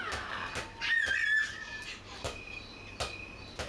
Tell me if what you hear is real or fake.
real